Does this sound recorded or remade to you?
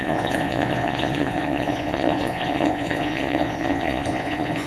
remade